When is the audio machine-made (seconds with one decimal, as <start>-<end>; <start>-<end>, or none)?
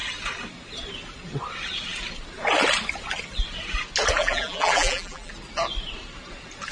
4.2-5.3